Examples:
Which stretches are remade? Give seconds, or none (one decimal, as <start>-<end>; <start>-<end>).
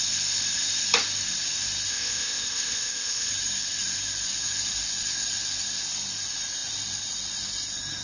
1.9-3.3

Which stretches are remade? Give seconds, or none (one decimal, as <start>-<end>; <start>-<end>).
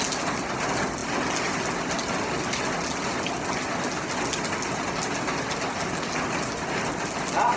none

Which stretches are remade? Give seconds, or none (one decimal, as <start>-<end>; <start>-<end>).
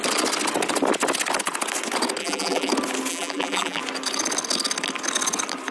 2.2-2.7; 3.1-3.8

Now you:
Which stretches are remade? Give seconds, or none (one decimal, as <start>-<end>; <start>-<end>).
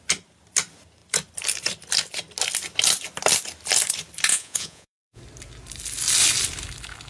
4.3-5.2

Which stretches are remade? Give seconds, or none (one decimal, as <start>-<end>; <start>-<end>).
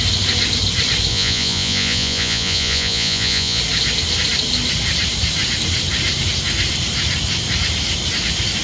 1.1-3.6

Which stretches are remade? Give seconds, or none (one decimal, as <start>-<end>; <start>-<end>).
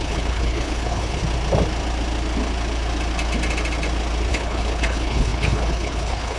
0.0-1.2; 4.3-6.4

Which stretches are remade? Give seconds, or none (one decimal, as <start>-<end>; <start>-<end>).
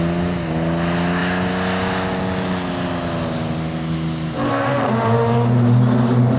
none